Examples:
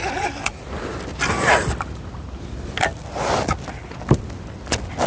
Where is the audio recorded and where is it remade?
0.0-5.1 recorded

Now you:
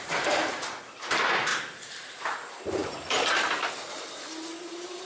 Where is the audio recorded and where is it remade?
0.0-2.8 remade; 2.8-4.6 recorded; 4.6-5.1 remade